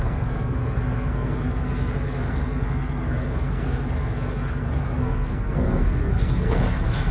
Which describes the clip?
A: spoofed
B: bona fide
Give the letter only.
A